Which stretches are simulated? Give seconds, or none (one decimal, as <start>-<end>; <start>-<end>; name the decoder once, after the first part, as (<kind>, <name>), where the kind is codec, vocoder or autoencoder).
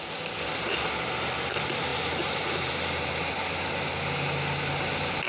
1.9-3.3 (vocoder, BigVGAN v2)